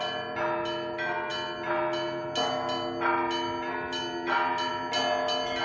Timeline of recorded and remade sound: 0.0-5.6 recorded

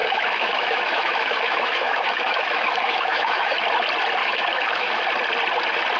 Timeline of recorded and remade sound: 0.0-3.6 remade; 3.6-4.2 recorded; 4.2-5.0 remade; 5.0-6.0 recorded

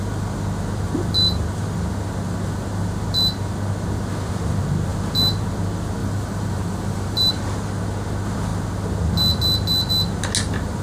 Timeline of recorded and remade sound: 0.0-6.0 recorded; 6.0-7.3 remade; 7.3-10.8 recorded

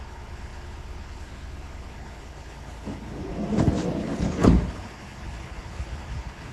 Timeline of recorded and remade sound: 0.0-3.3 remade; 3.3-4.0 recorded; 4.0-6.5 remade

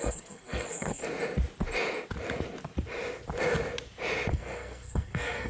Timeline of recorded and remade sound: 0.0-1.0 remade; 1.0-4.3 recorded; 4.3-5.5 remade